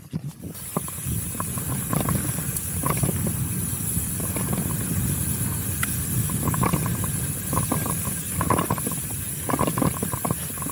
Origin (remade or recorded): recorded